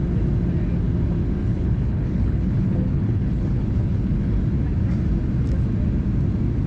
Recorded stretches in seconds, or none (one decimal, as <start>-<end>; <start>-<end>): 0.0-1.4; 4.4-6.7